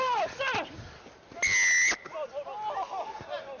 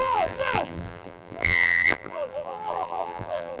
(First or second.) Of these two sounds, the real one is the first